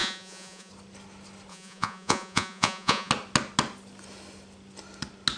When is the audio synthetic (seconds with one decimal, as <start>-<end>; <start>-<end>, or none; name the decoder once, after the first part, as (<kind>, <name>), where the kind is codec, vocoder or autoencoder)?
0.0-0.7 (vocoder, Vocos); 1.5-3.1

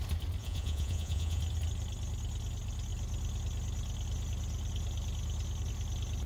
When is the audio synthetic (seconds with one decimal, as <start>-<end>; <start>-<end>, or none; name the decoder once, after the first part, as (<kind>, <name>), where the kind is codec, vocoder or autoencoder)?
0.4-1.4 (vocoder, Vocos)